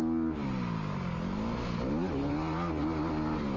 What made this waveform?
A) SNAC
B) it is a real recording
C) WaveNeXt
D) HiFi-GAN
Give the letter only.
B